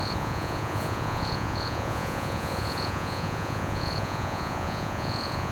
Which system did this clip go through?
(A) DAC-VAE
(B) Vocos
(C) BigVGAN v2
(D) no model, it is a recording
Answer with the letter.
B